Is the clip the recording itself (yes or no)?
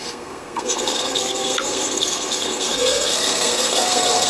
no